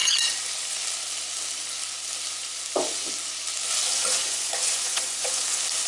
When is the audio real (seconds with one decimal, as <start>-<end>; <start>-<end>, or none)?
0.0-4.0; 5.4-5.9